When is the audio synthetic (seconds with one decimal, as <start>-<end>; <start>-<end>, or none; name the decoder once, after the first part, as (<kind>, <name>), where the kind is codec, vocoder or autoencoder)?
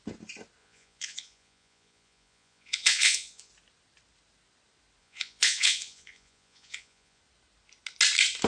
0.6-3.5 (vocoder, Vocos); 5.0-7.2